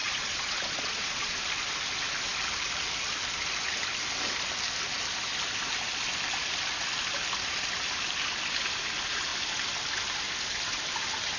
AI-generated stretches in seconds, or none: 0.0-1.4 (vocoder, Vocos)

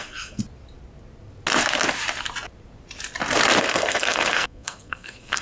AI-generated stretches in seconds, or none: 0.0-0.4 (codec, SNAC); 3.6-5.4

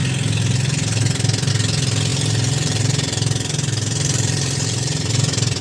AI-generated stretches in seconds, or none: 2.1-5.6 (vocoder, BigVGAN v2)

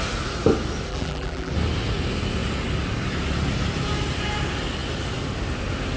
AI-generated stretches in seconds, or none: 0.9-1.5 (vocoder, BigVGAN v2)

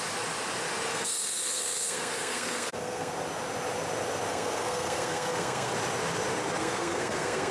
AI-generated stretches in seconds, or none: 0.9-3.1 (codec, SNAC); 4.3-5.7; 6.6-7.5